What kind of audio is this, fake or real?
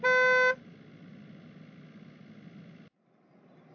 real